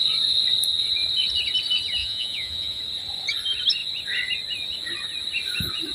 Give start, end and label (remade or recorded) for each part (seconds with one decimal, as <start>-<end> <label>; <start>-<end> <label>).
0.0-2.0 recorded; 2.0-2.8 remade; 2.8-5.9 recorded